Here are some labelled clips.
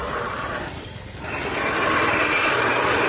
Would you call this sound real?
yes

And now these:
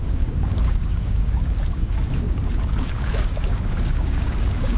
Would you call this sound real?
no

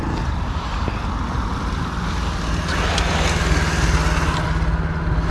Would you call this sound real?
yes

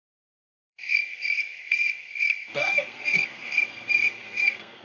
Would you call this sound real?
no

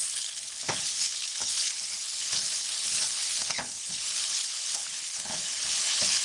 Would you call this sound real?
no